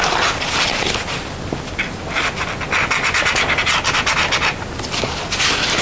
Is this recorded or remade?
recorded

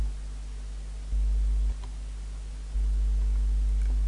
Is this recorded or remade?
recorded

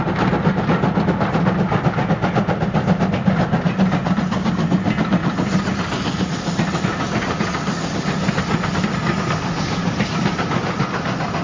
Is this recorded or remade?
recorded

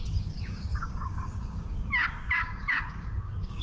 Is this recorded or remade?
remade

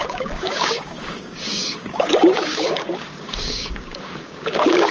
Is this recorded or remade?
remade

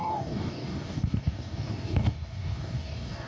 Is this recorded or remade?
remade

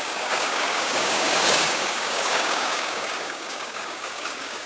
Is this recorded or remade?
remade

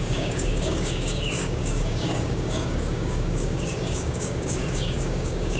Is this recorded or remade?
remade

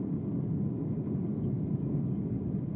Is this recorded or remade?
remade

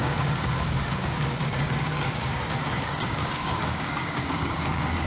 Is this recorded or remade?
remade